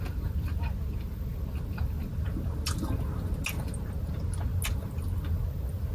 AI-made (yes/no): no